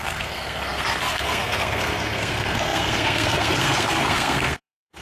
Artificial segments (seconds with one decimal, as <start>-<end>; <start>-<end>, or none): 0.0-5.0